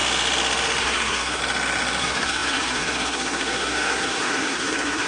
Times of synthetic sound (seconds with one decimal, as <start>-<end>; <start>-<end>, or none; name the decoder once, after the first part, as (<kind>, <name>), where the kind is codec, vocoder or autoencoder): 0.8-1.4 (codec, SNAC); 2.0-5.1